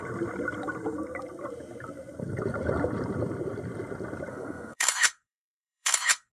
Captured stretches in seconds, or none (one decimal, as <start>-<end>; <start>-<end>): 0.0-4.3